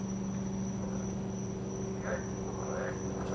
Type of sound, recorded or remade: recorded